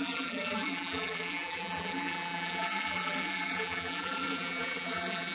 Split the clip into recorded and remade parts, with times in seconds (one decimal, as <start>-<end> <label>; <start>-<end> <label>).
0.0-5.3 remade